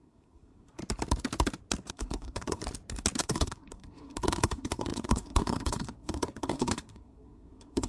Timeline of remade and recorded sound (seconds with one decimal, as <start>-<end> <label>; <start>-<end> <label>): 0.0-0.8 remade; 0.8-1.9 recorded; 1.9-2.6 remade; 2.6-3.2 recorded; 3.2-7.9 remade